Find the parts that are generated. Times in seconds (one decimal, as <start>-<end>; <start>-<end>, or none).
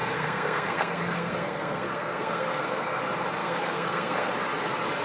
0.0-3.0; 3.4-4.3